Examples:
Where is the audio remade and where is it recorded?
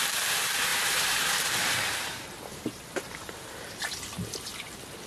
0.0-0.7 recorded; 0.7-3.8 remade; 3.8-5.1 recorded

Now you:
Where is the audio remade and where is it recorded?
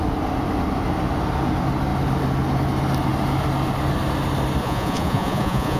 0.0-4.6 recorded; 4.6-5.8 remade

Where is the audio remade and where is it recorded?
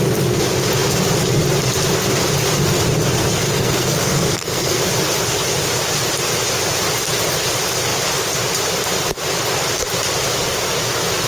0.0-3.2 recorded; 3.2-4.8 remade; 4.8-11.3 recorded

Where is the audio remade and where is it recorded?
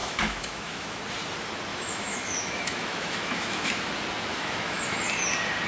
0.0-1.0 remade; 1.0-1.7 recorded; 1.7-3.9 remade; 3.9-4.3 recorded; 4.3-4.8 remade; 4.8-5.7 recorded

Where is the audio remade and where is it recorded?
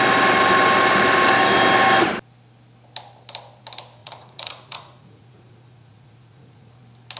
0.0-4.0 recorded; 4.0-6.8 remade; 6.8-7.2 recorded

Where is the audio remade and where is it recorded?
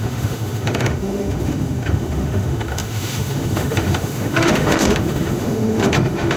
0.0-6.4 remade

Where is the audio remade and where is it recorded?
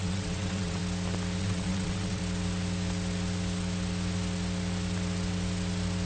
0.0-0.8 remade; 0.8-1.4 recorded; 1.4-2.2 remade; 2.2-6.1 recorded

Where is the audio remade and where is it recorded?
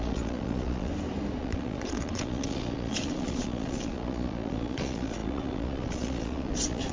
0.0-0.9 remade; 0.9-1.4 recorded; 1.4-6.9 remade